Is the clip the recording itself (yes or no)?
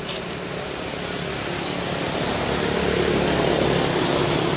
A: yes